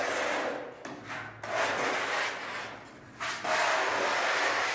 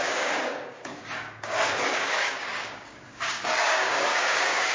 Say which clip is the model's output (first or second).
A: second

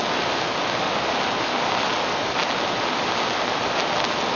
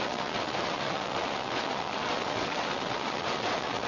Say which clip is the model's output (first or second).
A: second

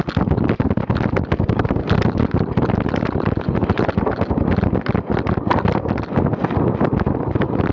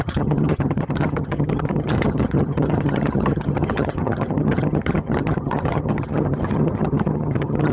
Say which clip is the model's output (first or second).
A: second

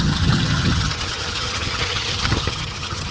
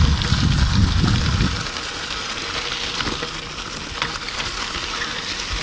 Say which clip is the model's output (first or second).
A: first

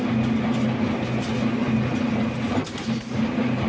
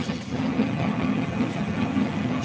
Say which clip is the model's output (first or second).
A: second